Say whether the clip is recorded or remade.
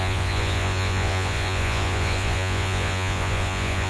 remade